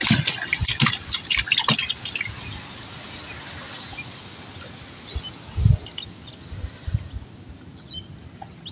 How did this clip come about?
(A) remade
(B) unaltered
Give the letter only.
B